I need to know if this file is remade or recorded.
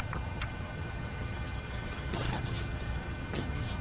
remade